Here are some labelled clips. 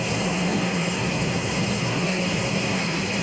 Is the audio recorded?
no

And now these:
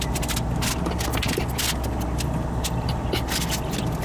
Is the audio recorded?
yes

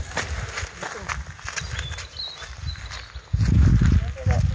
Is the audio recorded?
yes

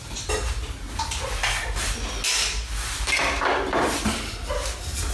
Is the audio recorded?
yes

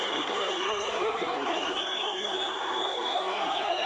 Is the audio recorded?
no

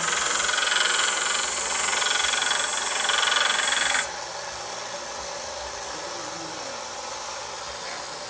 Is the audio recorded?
yes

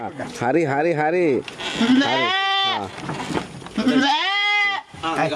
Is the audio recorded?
yes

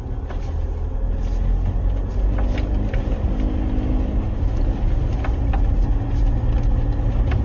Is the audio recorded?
yes